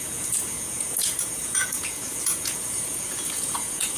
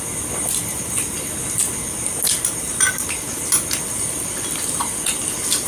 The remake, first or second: first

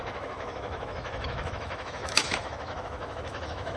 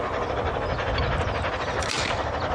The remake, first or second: first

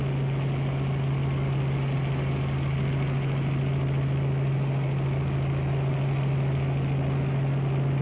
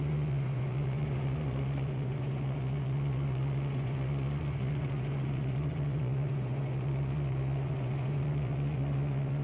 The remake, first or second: second